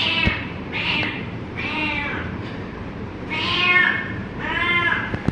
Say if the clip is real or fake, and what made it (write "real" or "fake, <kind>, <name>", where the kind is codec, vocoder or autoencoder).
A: fake, vocoder, BigVGAN v2